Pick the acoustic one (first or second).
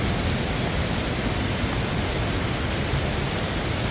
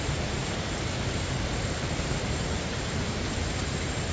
first